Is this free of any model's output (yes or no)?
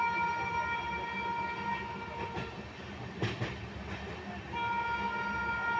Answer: yes